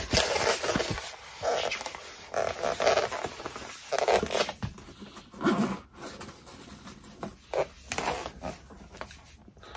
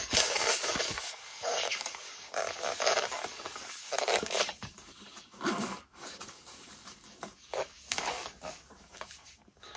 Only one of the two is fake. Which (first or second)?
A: second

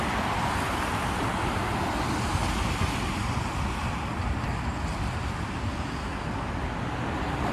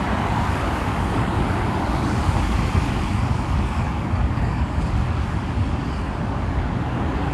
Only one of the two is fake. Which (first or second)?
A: second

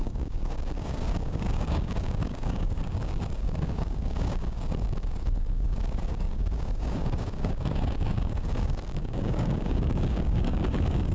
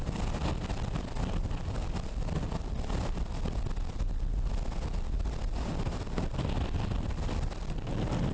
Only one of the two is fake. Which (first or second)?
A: first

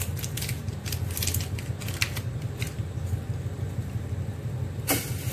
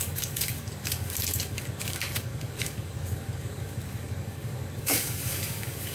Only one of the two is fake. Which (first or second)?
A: second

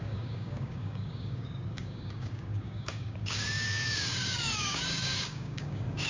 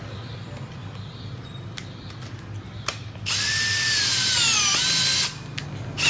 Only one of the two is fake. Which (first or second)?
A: first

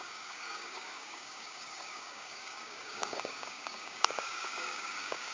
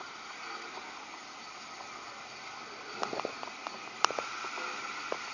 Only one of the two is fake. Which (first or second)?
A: first